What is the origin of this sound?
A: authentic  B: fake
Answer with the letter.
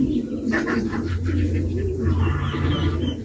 A